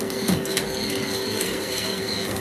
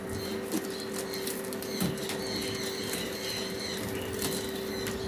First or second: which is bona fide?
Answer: second